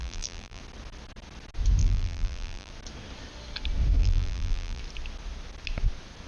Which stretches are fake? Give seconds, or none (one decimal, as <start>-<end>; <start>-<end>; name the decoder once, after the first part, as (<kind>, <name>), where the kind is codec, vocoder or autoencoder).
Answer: 0.0-0.6 (vocoder, BigVGAN v2); 1.8-2.7; 4.0-4.8